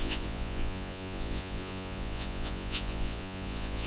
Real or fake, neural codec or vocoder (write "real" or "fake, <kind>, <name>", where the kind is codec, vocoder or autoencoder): fake, vocoder, Vocos